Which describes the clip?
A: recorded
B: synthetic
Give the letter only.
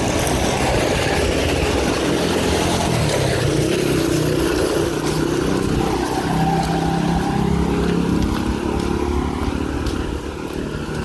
A